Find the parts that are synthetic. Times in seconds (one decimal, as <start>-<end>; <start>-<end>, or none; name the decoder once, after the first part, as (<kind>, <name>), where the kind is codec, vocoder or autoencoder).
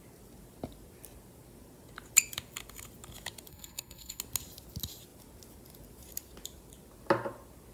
3.5-4.2 (codec, SNAC)